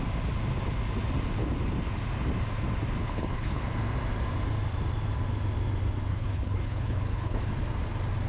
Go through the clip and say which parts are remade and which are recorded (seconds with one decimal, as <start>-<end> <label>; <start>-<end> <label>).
0.0-3.0 recorded; 3.0-3.6 remade; 3.6-6.1 recorded; 6.1-7.5 remade; 7.5-8.3 recorded